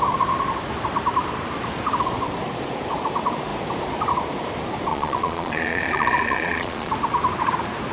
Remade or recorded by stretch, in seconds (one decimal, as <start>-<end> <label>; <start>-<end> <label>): 0.0-4.9 recorded; 4.9-6.9 remade; 6.9-7.9 recorded